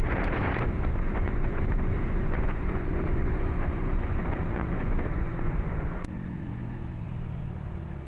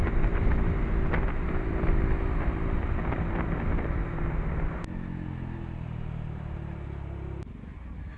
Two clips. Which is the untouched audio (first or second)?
second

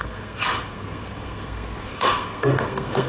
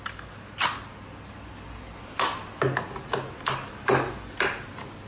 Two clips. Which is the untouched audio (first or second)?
second